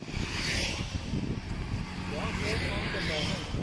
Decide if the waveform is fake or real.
real